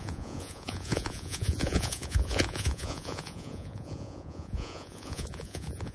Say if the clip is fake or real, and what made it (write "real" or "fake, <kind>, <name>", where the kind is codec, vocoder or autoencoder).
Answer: fake, vocoder, Vocos